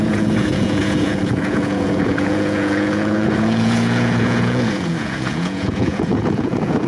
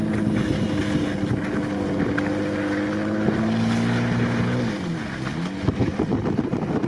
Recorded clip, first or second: second